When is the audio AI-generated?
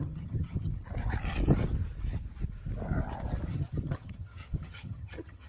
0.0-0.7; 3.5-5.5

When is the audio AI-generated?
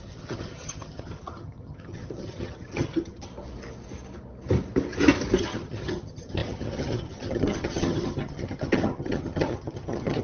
0.0-3.3; 5.4-10.2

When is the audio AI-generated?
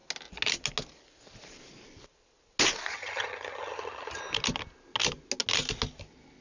2.9-4.2